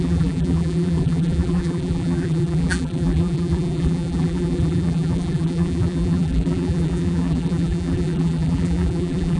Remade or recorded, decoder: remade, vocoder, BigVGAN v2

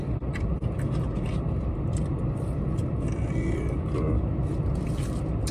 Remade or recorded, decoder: recorded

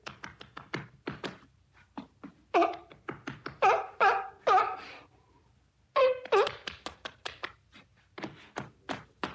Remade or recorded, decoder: recorded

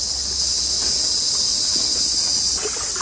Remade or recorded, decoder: recorded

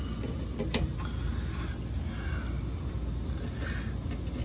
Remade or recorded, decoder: recorded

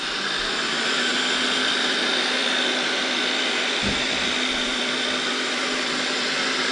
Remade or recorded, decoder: remade, vocoder, BigVGAN v2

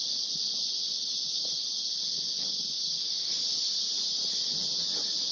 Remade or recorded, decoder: recorded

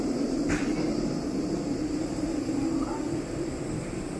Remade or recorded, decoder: remade, vocoder, BigVGAN v2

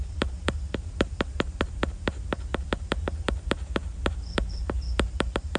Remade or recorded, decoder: remade, vocoder, BigVGAN v2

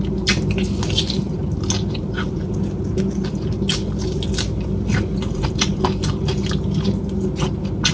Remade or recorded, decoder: recorded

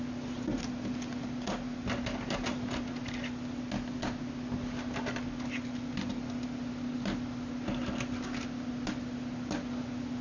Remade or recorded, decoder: recorded